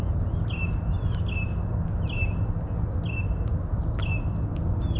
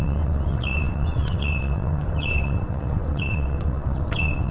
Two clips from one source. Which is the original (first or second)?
first